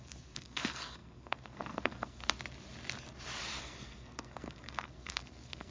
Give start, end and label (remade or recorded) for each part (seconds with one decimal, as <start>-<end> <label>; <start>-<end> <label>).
0.0-2.2 remade; 2.2-3.6 recorded; 3.6-5.7 remade